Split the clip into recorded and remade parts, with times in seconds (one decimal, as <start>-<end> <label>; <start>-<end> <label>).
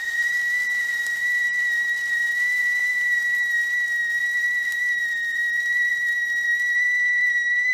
0.0-2.8 remade; 2.8-4.2 recorded; 4.2-5.9 remade; 5.9-7.7 recorded